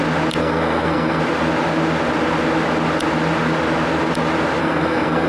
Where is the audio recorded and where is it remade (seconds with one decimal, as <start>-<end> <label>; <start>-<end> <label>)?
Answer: 0.0-0.4 recorded; 0.4-1.2 remade; 1.2-4.6 recorded; 4.6-5.3 remade